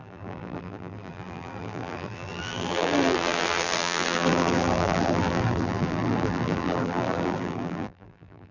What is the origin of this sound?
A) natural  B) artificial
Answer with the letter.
B